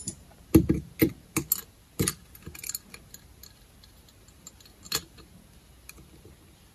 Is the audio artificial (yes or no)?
no